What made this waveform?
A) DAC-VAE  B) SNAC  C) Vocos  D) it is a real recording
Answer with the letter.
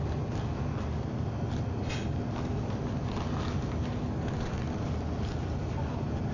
D